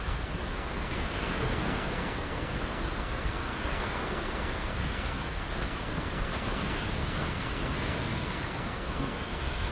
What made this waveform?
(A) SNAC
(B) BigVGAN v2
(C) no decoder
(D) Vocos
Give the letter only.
A